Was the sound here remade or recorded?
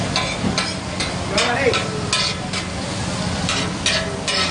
recorded